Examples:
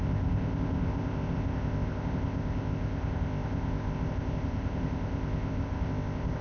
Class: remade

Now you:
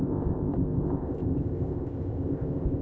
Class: remade